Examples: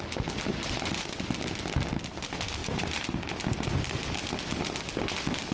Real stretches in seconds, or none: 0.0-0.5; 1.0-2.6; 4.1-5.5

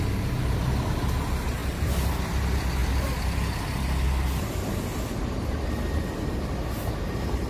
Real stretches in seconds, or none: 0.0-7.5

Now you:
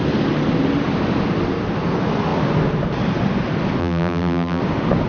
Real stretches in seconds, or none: 0.0-3.8; 4.6-5.1

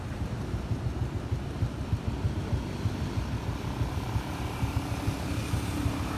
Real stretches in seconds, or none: 0.0-1.0; 2.4-6.2